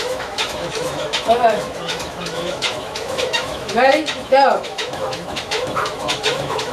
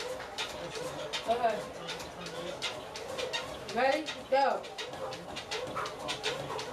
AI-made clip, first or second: first